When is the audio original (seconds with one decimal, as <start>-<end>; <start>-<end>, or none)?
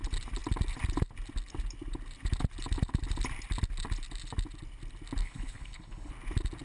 0.0-5.2; 6.1-6.6